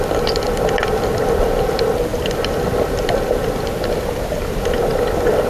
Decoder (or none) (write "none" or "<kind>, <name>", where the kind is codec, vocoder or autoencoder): none